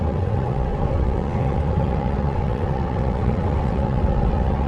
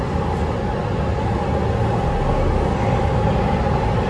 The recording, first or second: second